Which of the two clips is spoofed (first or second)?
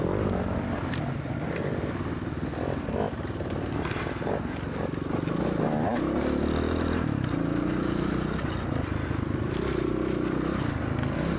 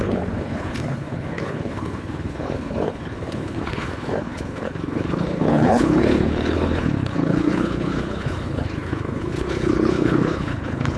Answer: second